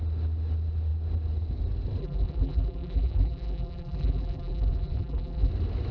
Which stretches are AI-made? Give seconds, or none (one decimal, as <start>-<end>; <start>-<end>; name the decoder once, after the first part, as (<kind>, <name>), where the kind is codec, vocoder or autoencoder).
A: 2.0-5.5 (vocoder, BigVGAN v2)

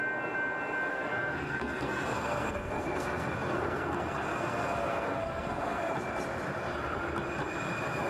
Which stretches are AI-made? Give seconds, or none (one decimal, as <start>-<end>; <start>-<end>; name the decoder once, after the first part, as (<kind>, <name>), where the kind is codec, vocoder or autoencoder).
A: 0.9-5.8 (codec, SNAC)

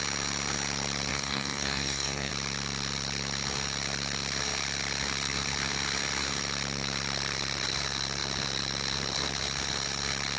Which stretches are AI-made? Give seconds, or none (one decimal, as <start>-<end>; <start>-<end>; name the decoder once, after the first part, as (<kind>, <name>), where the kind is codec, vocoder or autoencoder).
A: 1.1-2.3 (codec, SNAC)

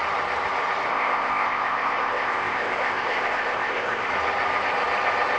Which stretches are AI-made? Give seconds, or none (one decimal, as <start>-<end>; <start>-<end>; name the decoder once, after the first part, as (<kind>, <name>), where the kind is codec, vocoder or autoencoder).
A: 0.9-4.1 (codec, ZipCodec)